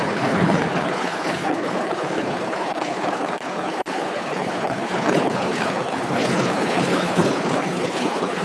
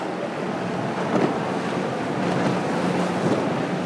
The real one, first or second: second